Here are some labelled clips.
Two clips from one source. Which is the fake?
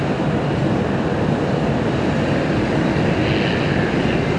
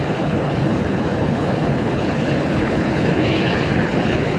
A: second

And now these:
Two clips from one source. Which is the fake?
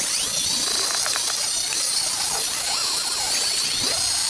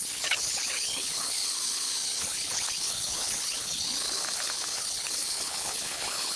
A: second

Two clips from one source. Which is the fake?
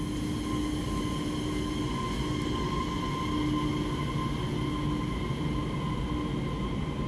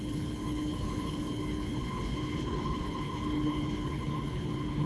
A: second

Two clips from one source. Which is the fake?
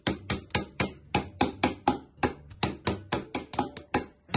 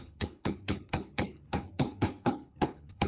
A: second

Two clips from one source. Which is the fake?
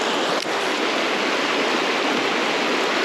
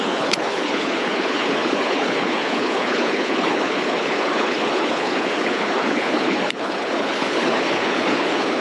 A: second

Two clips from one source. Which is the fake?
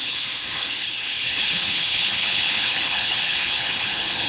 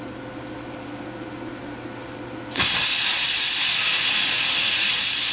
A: first